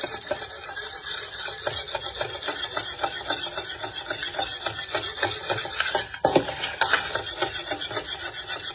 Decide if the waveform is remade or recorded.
recorded